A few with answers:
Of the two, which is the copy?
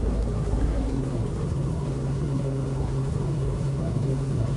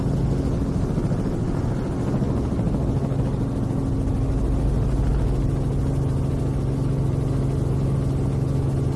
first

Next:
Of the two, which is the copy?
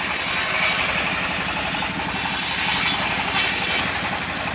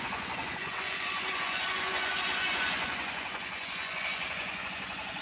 second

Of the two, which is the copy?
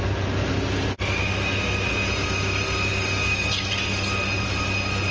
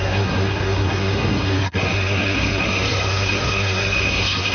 second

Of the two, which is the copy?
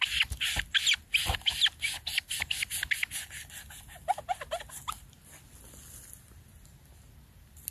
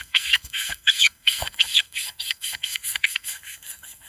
second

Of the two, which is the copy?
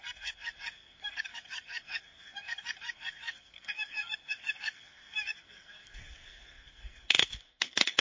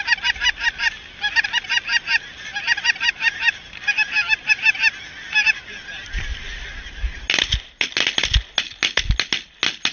first